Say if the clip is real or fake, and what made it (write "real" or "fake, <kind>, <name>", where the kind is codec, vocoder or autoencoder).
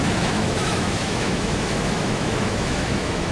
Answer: fake, autoencoder, DAC-VAE